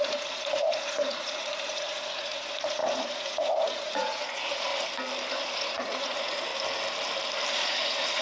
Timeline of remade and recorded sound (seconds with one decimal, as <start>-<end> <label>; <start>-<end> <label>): 0.0-4.7 remade; 4.7-5.3 recorded; 5.3-6.5 remade; 6.5-7.5 recorded; 7.5-8.2 remade